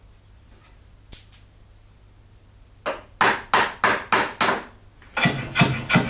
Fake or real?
real